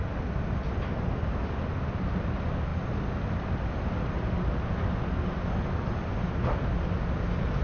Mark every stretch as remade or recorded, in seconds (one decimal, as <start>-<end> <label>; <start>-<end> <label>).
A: 0.0-7.6 recorded